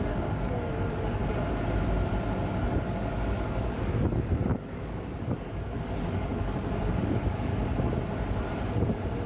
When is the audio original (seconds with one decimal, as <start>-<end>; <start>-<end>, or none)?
1.2-2.6; 7.5-9.3